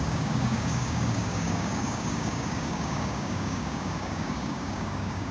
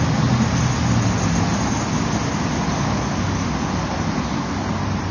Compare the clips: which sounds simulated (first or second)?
first